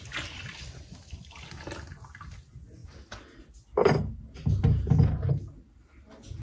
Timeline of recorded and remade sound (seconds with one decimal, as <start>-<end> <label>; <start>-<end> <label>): 0.0-6.4 recorded